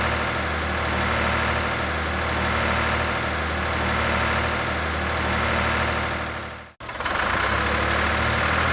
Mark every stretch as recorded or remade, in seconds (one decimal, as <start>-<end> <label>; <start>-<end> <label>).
0.0-8.7 recorded